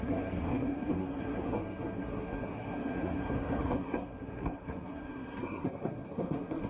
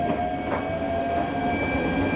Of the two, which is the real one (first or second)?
second